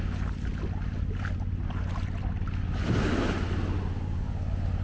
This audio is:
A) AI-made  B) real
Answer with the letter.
B